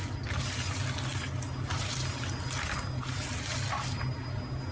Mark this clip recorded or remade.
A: recorded